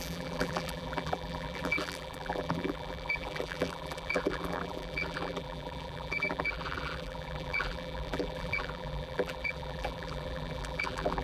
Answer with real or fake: fake